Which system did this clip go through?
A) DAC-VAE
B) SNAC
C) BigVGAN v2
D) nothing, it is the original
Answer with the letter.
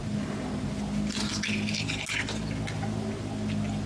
D